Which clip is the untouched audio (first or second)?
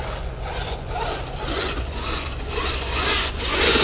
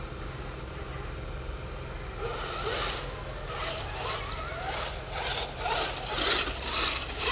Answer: second